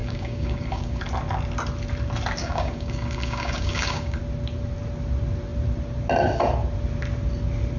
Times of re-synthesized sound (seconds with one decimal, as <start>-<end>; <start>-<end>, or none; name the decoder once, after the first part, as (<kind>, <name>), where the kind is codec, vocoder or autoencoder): 0.0-1.0 (codec, DAC); 2.4-4.2